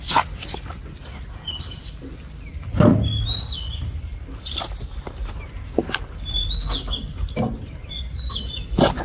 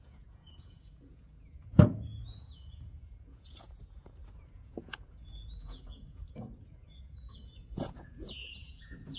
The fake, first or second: second